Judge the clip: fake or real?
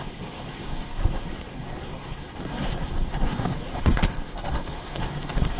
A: fake